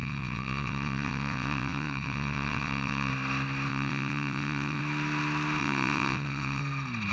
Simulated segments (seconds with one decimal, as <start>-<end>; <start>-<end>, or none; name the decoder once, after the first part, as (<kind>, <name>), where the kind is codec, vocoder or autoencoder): 0.0-3.1 (vocoder, WaveNeXt); 3.7-4.8; 5.6-6.6